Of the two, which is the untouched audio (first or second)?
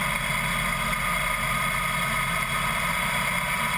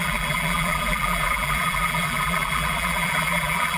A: first